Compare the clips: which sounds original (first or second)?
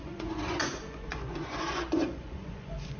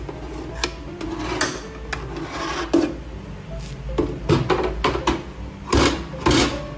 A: second